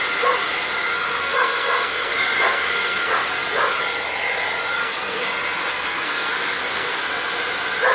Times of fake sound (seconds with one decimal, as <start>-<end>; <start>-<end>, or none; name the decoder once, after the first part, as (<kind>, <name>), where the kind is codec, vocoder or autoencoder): 1.2-3.3 (codec, SNAC); 4.8-5.3; 5.7-7.0